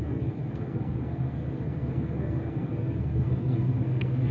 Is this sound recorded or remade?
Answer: remade